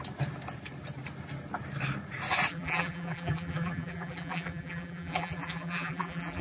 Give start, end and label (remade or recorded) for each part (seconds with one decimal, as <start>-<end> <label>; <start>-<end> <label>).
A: 0.0-2.5 recorded; 2.5-6.4 remade